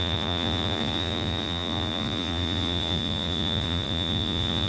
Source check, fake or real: fake